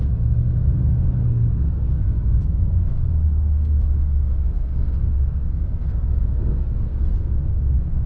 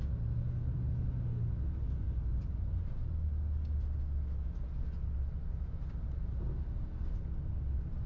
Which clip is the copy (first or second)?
first